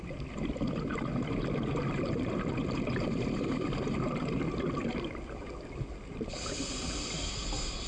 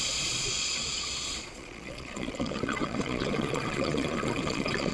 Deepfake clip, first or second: second